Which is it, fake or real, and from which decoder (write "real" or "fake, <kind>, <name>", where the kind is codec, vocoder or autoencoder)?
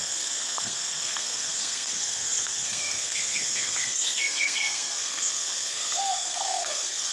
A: fake, codec, SNAC